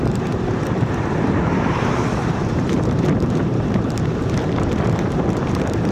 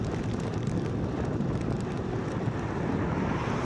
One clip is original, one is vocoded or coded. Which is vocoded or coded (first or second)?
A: first